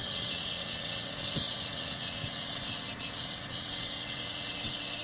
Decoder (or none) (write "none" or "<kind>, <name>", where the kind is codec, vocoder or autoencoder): vocoder, WaveNeXt